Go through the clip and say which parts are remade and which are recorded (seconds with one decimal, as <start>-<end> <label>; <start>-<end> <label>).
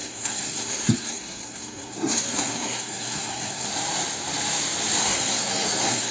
0.0-3.7 remade; 3.7-5.0 recorded; 5.0-6.1 remade